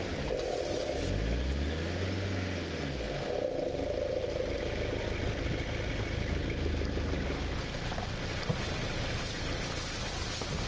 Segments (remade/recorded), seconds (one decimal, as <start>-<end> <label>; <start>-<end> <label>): 0.0-6.4 recorded; 6.4-10.1 remade; 10.1-10.7 recorded